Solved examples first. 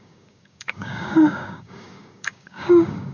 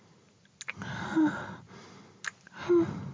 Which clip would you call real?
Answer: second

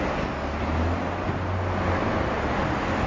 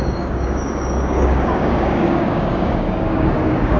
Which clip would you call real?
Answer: first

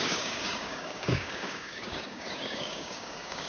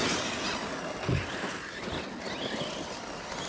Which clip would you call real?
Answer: second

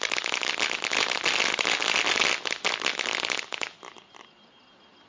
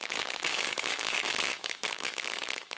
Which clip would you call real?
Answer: first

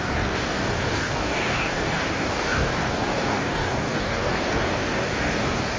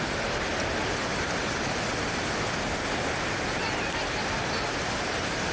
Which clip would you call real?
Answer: second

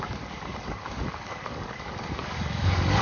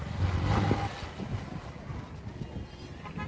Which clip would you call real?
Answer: second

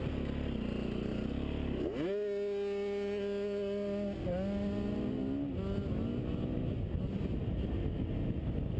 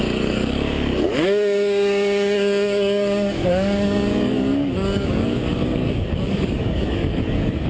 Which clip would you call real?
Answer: first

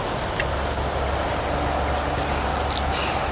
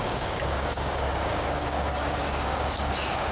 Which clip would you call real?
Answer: first